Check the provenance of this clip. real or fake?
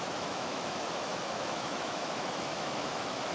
fake